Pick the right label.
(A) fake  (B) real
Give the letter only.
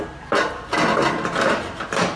B